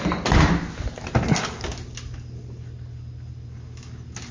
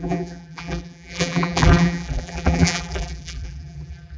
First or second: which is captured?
first